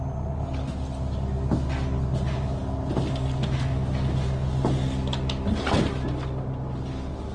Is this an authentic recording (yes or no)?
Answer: yes